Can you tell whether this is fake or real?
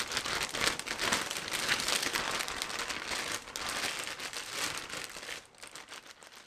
real